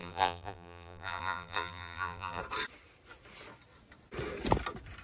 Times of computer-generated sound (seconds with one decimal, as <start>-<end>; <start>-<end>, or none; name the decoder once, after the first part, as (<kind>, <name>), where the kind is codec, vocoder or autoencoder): 0.0-2.4 (vocoder, BigVGAN v2)